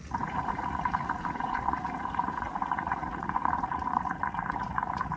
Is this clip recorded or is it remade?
remade